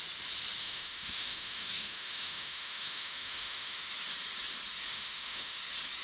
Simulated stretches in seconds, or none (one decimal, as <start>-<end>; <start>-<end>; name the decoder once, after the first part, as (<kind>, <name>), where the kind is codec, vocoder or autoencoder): 0.6-3.9 (autoencoder, DAC-VAE); 4.9-5.6